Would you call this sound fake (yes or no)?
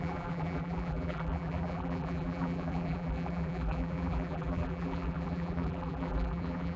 yes